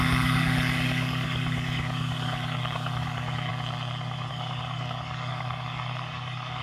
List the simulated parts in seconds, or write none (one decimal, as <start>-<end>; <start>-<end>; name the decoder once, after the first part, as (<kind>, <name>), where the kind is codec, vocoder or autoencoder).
0.0-3.5 (codec, DAC); 4.3-6.6